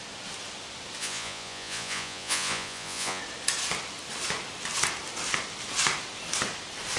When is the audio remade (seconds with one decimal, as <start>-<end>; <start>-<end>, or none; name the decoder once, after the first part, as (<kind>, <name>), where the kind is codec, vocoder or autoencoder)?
1.0-3.2 (vocoder, Vocos)